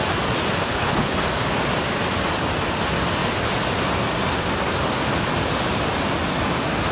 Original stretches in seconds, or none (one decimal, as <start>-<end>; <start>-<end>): 0.0-0.6; 1.2-6.9